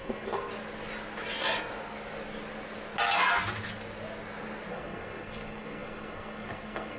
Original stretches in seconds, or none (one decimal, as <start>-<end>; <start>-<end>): 0.5-4.7